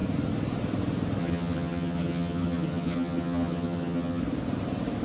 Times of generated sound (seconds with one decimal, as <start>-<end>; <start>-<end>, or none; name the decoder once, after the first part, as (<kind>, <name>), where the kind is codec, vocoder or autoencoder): 1.2-4.2 (vocoder, HiFi-GAN)